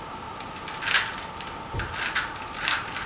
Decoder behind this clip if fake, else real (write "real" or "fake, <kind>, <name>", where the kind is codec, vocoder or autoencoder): real